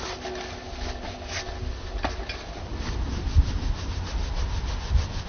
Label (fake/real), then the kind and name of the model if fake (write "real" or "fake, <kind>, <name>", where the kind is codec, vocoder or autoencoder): real